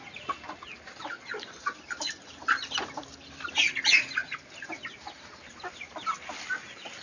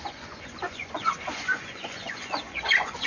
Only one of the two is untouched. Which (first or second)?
first